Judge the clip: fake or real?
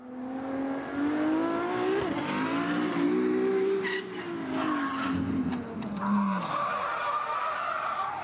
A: real